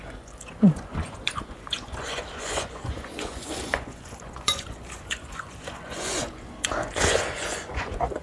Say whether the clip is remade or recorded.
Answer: remade